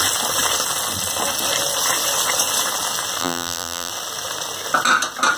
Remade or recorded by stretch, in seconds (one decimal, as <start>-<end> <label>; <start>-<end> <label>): 0.0-3.2 recorded; 3.2-3.9 remade; 3.9-5.4 recorded